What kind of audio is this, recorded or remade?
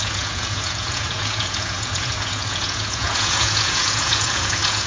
remade